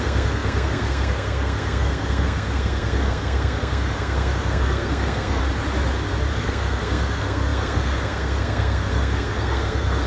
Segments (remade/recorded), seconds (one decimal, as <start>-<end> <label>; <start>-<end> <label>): 0.0-5.4 remade; 5.4-6.3 recorded; 6.3-10.1 remade